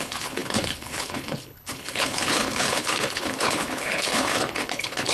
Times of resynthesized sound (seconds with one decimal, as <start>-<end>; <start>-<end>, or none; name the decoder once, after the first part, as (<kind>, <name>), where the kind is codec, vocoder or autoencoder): 0.0-5.1 (codec, HILCodec)